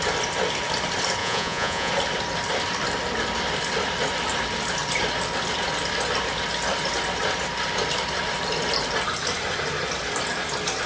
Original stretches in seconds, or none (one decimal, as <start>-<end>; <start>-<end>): 0.0-1.2; 1.9-10.9